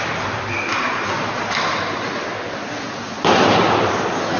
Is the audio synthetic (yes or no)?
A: no